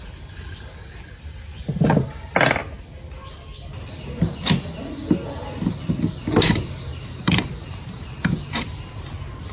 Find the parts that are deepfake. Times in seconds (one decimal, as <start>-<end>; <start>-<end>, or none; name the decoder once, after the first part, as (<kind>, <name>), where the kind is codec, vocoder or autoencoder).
6.9-9.0 (vocoder, BigVGAN v2)